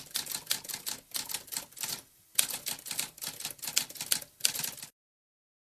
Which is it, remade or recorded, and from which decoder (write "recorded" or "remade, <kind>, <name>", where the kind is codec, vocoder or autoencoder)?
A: recorded